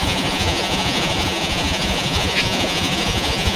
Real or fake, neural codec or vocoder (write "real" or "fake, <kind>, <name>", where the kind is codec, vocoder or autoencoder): fake, vocoder, Vocos